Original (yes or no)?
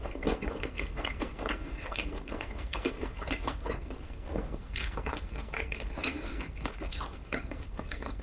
no